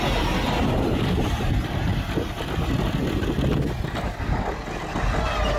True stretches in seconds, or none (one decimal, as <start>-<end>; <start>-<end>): 0.0-0.6; 1.5-5.6